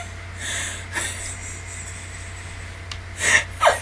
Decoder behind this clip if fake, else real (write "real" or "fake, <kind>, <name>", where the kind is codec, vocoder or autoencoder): real